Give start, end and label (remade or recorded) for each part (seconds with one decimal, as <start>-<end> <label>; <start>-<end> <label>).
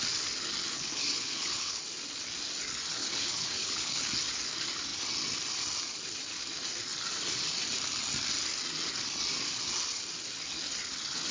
0.0-0.6 recorded; 0.6-1.8 remade; 1.8-3.0 recorded; 3.0-4.1 remade; 4.1-11.3 recorded